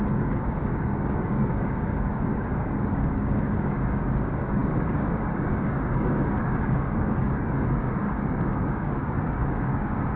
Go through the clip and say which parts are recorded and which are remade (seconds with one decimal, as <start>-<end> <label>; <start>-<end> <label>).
0.0-10.2 remade